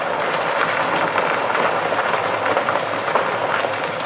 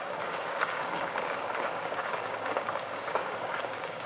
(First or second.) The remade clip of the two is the second